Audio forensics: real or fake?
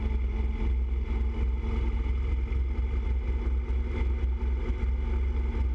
real